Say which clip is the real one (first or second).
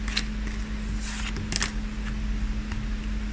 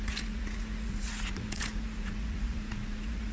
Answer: first